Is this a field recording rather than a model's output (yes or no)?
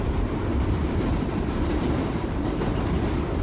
no